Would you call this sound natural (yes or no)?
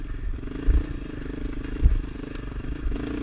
yes